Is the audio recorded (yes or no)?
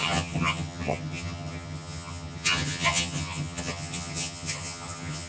no